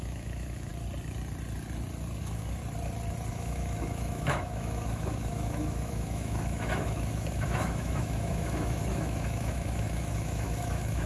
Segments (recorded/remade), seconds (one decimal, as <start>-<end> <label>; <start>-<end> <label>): 0.0-0.7 remade; 0.7-2.2 recorded; 2.2-2.6 remade; 2.6-3.3 recorded; 3.3-11.1 remade